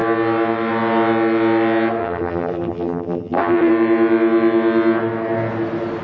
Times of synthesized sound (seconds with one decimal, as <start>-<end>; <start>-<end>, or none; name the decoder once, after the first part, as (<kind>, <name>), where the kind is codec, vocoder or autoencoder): 2.0-3.7 (vocoder, BigVGAN v2)